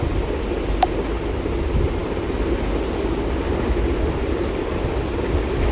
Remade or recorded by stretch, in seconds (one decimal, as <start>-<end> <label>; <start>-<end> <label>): 0.0-5.7 recorded